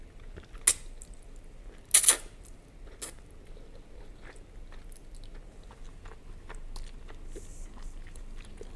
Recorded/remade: recorded